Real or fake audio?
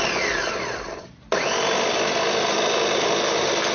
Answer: real